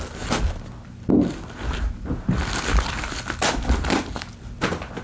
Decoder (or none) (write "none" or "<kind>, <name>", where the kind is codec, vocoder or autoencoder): none